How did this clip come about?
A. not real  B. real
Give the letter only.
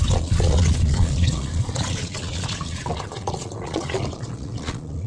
A